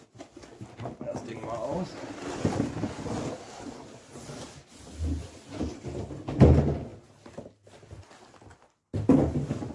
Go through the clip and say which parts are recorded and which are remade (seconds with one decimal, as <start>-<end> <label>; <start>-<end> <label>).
0.0-9.7 recorded